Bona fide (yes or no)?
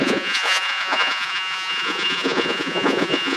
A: no